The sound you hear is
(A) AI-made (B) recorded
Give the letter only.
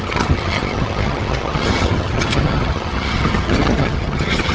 A